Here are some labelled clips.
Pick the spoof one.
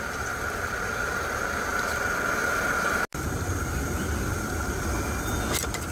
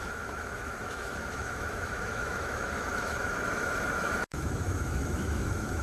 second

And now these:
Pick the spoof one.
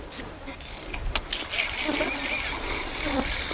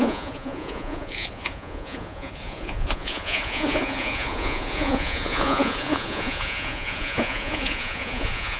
second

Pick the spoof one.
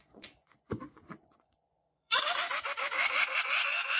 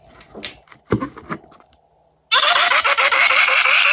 first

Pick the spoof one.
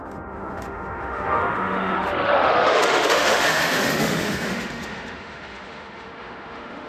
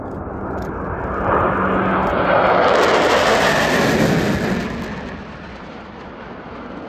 first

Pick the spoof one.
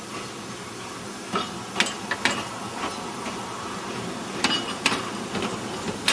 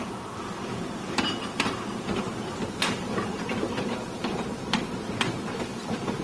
second